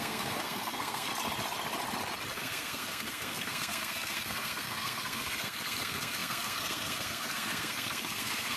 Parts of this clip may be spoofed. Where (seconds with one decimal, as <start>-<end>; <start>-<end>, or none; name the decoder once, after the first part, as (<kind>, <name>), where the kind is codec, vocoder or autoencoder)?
0.0-1.1 (codec, SNAC); 2.3-8.6